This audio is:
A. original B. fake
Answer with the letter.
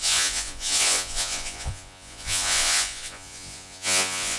B